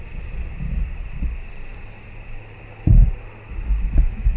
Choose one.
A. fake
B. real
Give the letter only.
B